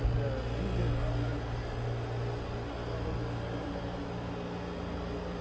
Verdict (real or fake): real